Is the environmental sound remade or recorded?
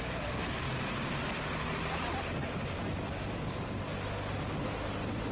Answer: recorded